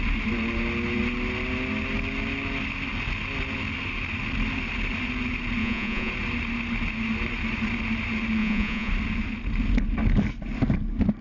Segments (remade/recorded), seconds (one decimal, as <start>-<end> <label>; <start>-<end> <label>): 0.0-5.6 recorded; 5.6-6.1 remade; 6.1-8.4 recorded; 8.4-8.9 remade; 8.9-11.2 recorded